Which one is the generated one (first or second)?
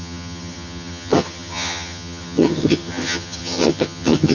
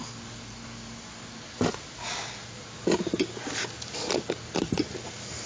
first